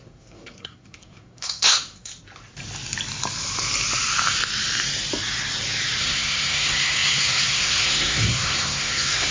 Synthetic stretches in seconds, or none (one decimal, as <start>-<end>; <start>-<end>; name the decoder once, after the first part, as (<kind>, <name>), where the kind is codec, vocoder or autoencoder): 0.0-2.1 (codec, SNAC); 6.0-9.3

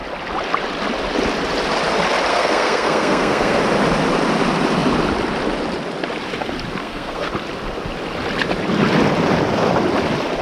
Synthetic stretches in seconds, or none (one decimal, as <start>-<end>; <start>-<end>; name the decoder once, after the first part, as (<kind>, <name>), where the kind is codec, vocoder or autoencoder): 2.3-3.6 (codec, SNAC); 6.8-7.3

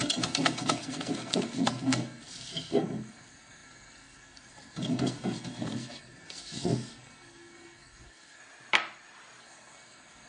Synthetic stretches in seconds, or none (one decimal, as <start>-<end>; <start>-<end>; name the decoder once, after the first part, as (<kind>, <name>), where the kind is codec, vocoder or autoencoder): 0.0-8.4 (codec, SNAC); 9.4-10.3

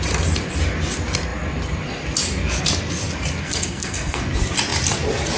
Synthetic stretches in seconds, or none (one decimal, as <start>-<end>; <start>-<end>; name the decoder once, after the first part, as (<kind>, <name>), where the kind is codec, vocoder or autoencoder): 3.4-4.2 (codec, SNAC)

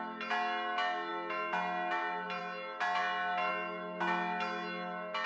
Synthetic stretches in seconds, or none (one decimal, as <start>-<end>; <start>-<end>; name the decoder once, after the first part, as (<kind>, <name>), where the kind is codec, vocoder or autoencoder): none

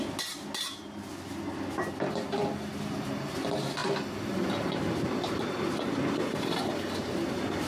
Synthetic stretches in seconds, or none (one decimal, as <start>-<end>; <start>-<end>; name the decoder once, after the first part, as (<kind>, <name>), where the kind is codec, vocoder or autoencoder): none

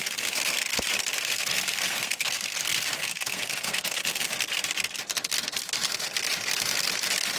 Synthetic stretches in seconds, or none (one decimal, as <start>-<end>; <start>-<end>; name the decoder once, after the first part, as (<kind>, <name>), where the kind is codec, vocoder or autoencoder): 0.0-0.7 (codec, SNAC); 1.2-4.0